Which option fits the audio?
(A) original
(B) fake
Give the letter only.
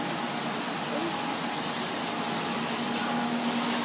A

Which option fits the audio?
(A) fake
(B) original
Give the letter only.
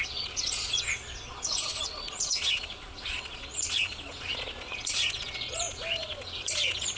A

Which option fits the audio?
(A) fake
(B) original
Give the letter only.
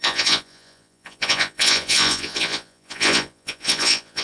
A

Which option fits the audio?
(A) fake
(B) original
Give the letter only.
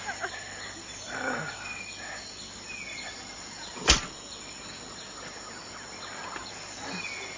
B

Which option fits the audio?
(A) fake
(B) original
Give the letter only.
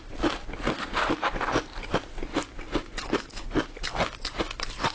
B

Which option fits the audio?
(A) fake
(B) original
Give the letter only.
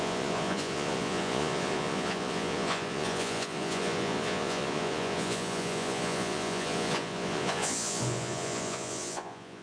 A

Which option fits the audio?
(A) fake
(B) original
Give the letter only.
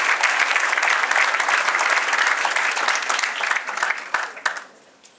B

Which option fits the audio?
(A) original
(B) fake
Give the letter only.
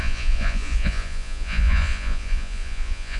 B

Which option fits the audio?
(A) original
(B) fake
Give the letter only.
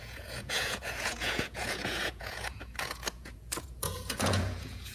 B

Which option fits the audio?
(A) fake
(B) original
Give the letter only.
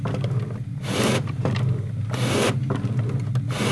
B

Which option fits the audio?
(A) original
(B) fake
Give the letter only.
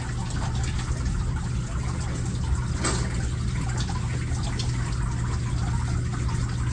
A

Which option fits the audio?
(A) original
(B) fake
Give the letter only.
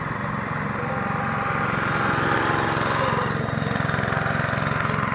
A